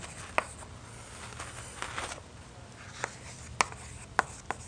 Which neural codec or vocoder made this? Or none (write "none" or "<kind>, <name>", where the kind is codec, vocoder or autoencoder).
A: none